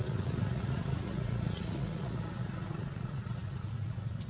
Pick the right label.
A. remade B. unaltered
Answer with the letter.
A